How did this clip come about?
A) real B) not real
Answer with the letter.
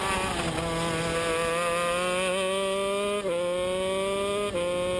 A